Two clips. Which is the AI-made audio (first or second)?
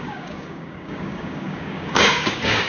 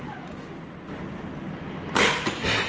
first